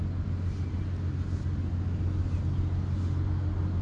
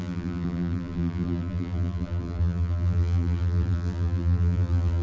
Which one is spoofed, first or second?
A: second